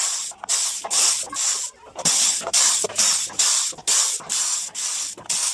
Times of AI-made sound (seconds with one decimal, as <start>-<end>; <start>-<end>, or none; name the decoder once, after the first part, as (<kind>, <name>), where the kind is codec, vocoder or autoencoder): 1.4-3.1 (vocoder, BigVGAN v2)